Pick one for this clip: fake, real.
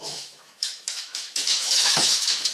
fake